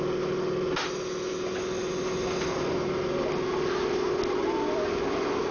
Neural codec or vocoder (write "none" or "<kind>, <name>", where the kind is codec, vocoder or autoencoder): none